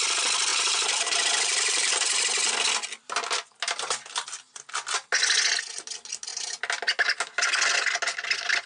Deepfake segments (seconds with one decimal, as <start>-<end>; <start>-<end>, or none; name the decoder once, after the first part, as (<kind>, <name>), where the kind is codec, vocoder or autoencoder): 0.5-2.2 (vocoder, BigVGAN v2); 6.3-6.8